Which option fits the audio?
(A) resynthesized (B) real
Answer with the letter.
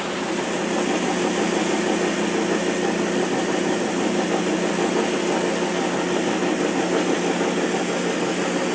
B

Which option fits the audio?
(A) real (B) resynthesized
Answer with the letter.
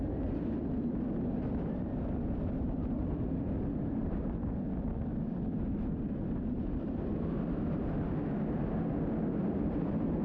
A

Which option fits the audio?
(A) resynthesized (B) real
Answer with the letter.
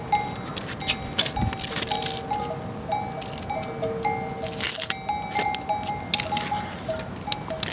B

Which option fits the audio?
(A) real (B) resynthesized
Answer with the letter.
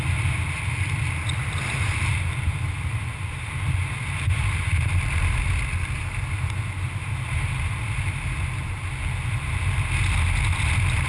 A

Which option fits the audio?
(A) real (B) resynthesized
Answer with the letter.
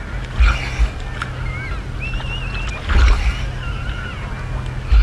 A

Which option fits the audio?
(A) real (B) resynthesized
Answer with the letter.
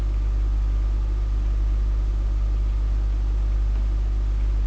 A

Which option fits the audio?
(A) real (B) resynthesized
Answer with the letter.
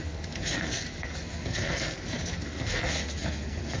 B